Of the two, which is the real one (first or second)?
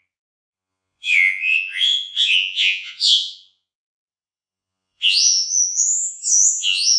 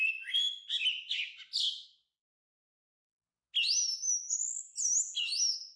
second